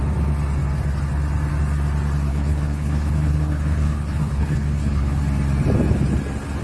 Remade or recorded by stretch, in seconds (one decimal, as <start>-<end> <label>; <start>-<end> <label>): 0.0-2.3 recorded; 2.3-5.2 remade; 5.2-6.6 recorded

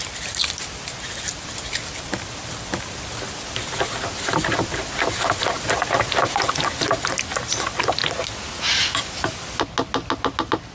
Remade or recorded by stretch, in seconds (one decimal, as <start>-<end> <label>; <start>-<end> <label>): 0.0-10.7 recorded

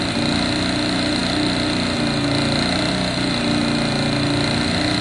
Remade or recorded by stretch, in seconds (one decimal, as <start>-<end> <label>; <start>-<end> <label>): 0.0-5.0 recorded

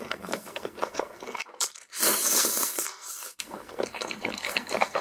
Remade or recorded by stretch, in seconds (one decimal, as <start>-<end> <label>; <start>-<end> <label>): 0.0-5.0 remade